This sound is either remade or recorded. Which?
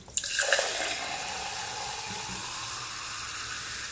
recorded